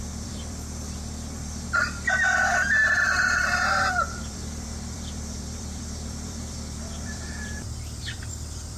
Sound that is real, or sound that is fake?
fake